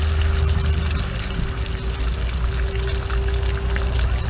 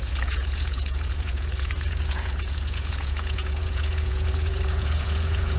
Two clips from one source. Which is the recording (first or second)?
first